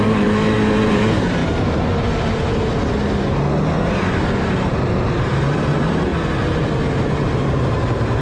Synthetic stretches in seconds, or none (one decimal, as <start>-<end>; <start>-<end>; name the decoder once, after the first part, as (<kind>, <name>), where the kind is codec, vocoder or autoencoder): 0.0-1.4 (vocoder, BigVGAN v2); 4.0-6.1; 6.9-8.2